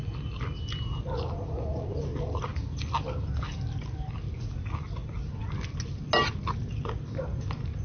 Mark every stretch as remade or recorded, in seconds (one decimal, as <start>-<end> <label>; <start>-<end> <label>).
0.0-7.8 recorded